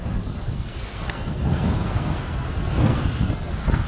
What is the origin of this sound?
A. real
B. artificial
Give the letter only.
B